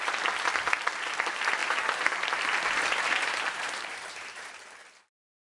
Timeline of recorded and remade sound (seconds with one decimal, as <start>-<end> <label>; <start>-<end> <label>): 0.0-1.6 recorded; 1.6-4.5 remade; 4.5-5.5 recorded